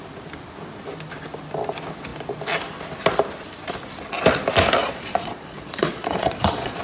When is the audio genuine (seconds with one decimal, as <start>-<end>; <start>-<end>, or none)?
0.0-4.8